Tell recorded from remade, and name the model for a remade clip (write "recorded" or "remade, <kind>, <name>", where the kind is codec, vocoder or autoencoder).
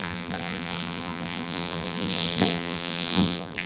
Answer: remade, vocoder, BigVGAN v2